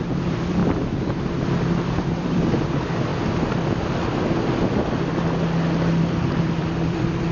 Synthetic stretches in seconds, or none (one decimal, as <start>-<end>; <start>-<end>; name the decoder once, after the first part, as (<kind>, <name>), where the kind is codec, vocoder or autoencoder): 0.0-0.6 (vocoder, BigVGAN v2); 1.1-3.1; 6.4-7.3